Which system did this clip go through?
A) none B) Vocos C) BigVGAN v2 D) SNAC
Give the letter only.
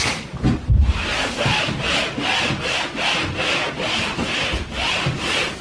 A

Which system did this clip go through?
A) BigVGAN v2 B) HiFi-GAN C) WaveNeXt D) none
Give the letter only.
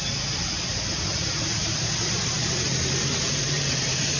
A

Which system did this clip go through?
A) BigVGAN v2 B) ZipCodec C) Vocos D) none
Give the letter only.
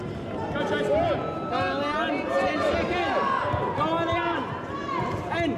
D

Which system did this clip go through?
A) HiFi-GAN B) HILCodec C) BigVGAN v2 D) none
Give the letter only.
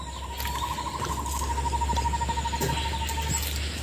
C